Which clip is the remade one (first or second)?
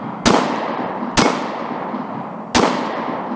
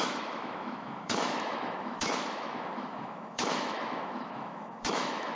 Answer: second